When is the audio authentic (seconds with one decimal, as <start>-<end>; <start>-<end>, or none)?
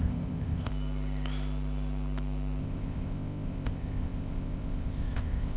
0.7-2.6